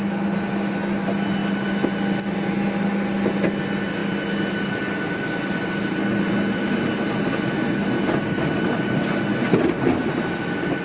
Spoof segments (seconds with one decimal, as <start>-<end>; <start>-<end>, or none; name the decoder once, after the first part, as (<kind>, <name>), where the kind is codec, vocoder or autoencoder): none